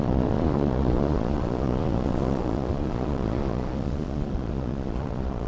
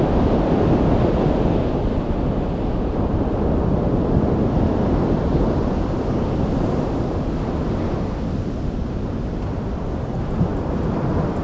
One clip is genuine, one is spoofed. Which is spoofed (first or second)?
first